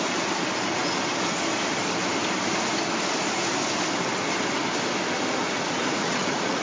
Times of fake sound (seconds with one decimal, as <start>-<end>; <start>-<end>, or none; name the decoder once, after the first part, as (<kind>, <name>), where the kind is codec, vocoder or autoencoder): 5.4-6.6 (vocoder, Vocos)